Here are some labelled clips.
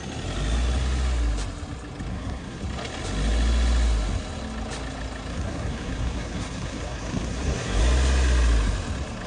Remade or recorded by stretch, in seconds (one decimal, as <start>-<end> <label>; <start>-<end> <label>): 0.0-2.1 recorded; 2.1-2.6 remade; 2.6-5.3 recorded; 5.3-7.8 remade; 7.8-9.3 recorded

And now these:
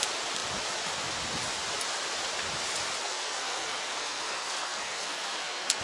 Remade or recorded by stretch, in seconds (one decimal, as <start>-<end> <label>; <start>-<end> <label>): 0.0-3.0 recorded; 3.0-5.8 remade

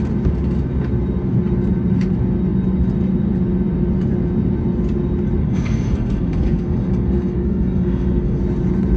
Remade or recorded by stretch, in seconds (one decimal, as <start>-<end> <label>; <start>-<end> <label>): 0.0-5.4 recorded; 5.4-8.4 remade; 8.4-9.0 recorded

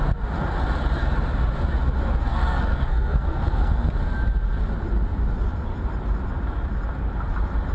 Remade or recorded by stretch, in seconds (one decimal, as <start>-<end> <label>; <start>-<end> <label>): 0.0-2.3 recorded; 2.3-3.9 remade; 3.9-7.7 recorded